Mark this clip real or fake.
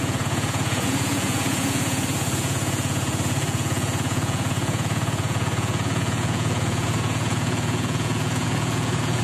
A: fake